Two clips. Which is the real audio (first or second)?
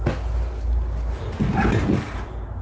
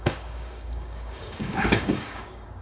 first